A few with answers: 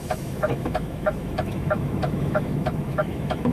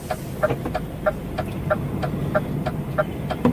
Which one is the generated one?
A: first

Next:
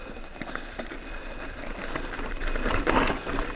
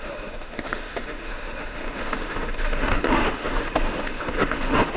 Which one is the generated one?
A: second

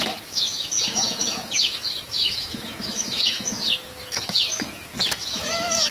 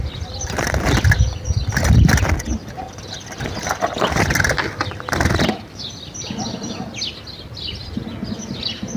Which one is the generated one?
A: first